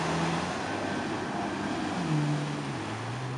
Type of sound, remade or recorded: recorded